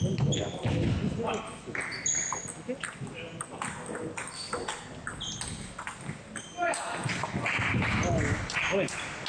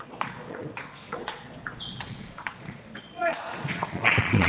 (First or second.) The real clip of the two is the first